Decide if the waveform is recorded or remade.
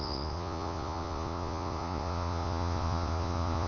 remade